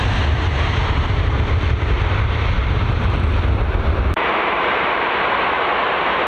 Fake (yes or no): yes